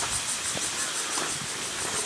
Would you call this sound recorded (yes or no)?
yes